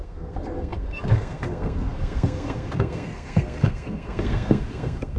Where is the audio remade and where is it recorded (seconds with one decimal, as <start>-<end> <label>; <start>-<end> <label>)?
0.0-5.2 remade